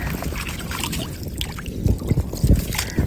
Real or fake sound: real